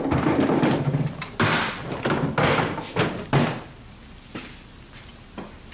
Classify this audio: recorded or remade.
recorded